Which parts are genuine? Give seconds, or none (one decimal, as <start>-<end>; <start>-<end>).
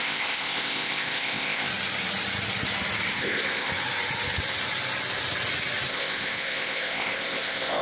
1.7-3.1; 3.7-5.9